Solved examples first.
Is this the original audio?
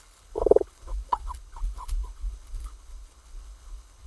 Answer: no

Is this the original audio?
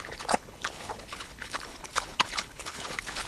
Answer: no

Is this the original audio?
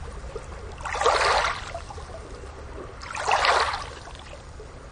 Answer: yes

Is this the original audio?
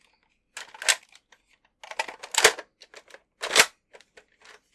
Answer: yes